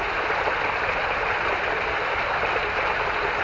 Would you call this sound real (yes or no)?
no